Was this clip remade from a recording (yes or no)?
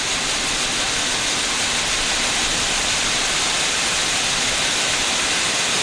no